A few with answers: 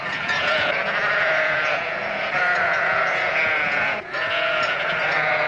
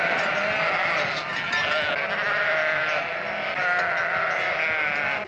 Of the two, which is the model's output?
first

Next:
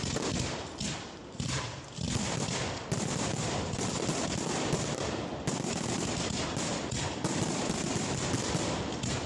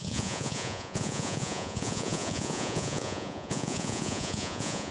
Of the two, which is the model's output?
second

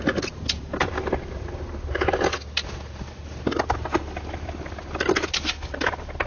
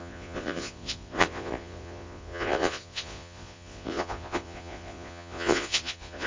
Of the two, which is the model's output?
second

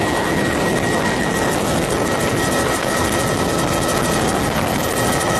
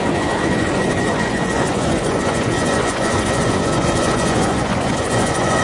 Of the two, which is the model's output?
second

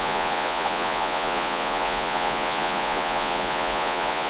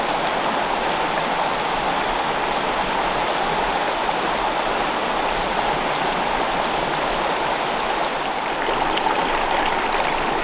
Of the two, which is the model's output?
first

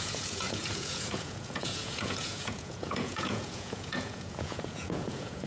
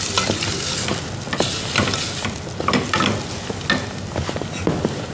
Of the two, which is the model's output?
first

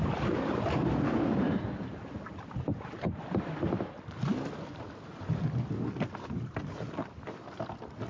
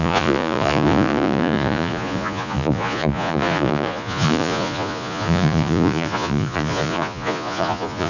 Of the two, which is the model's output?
second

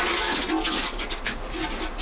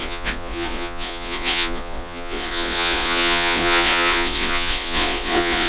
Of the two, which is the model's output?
second